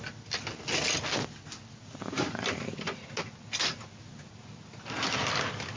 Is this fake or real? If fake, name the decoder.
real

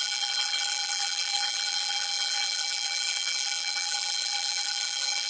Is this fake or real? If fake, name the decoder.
fake, vocoder, BigVGAN v2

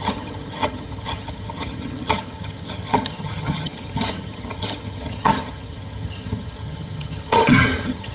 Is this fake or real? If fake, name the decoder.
fake, vocoder, HiFi-GAN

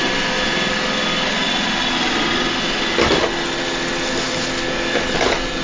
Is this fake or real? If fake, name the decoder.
real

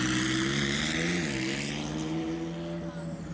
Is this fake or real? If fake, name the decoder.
real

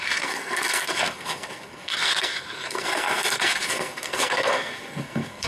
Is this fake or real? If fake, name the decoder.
fake, codec, SNAC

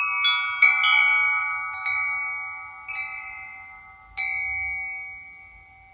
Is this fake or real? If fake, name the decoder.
real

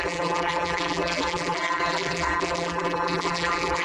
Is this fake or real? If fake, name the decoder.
fake, vocoder, BigVGAN v2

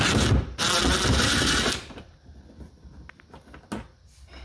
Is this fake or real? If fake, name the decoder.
real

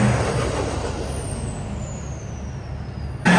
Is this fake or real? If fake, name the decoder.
real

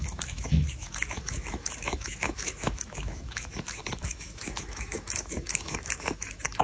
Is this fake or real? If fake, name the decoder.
fake, autoencoder, DAC-VAE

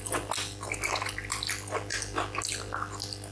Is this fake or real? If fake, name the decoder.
real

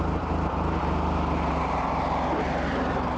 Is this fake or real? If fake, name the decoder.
real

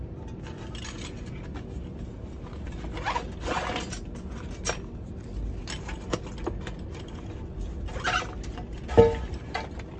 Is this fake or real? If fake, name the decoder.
real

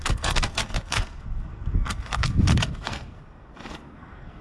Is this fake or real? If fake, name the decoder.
fake, codec, SNAC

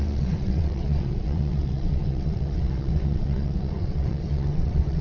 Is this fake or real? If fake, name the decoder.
fake, vocoder, WaveNeXt